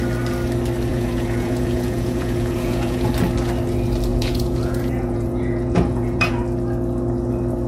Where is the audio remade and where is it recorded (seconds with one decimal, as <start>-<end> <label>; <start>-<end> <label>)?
0.0-0.9 recorded; 0.9-3.1 remade; 3.1-4.1 recorded; 4.1-6.4 remade; 6.4-7.7 recorded